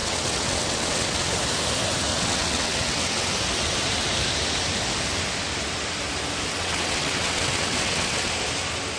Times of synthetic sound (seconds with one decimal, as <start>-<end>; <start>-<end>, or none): 0.0-1.3; 2.1-3.3; 6.5-8.3